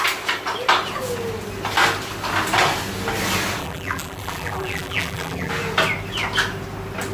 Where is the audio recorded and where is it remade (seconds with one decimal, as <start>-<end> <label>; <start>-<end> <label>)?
0.0-3.6 recorded; 3.6-5.5 remade; 5.5-7.1 recorded